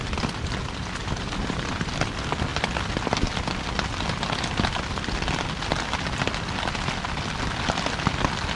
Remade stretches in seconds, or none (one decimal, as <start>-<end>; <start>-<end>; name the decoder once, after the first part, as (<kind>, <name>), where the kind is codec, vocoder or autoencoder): 1.0-1.9 (vocoder, BigVGAN v2)